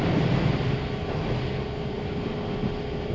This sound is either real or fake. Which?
real